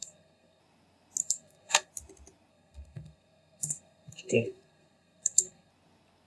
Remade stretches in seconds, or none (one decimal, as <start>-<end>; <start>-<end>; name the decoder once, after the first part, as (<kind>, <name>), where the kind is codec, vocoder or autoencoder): 0.0-0.6 (codec, SNAC); 1.2-1.9; 2.5-5.7